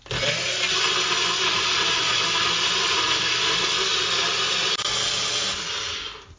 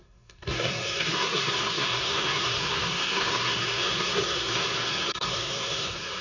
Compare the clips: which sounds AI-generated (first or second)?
second